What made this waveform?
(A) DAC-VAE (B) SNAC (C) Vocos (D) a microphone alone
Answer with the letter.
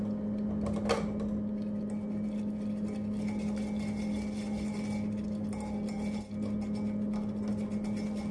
D